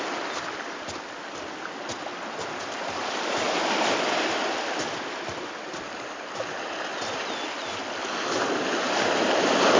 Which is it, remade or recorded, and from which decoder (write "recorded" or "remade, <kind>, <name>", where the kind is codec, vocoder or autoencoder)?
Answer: recorded